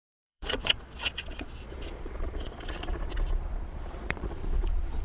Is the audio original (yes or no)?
no